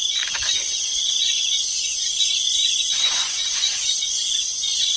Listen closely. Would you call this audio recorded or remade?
remade